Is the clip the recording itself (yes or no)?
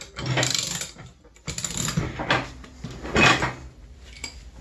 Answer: yes